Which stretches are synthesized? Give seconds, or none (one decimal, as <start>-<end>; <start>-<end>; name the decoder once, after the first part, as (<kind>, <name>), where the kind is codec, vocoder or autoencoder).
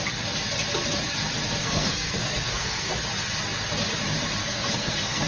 1.6-2.9 (codec, SNAC); 4.4-5.3